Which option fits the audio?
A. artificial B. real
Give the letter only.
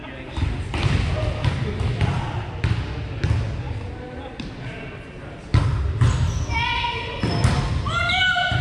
B